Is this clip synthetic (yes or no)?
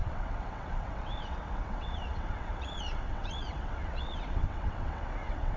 yes